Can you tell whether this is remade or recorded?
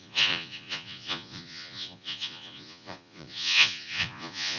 remade